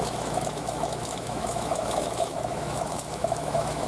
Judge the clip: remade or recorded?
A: remade